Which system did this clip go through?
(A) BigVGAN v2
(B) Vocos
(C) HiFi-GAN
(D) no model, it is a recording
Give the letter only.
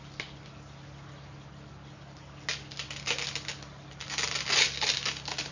D